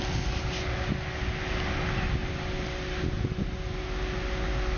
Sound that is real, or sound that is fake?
real